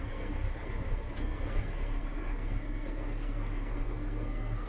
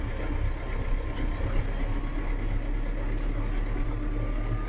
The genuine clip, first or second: second